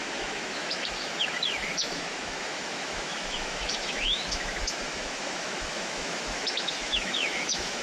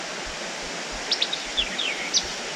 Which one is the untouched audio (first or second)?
second